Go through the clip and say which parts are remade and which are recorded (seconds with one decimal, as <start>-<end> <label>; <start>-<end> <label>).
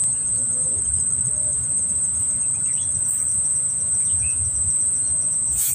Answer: 0.0-0.8 remade; 0.8-1.5 recorded; 1.5-2.5 remade; 2.5-3.3 recorded; 3.3-5.7 remade